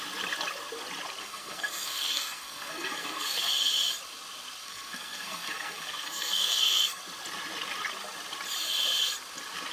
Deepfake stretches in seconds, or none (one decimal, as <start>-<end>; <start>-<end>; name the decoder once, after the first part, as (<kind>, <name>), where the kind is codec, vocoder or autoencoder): 1.2-3.5 (codec, SNAC); 4.6-7.0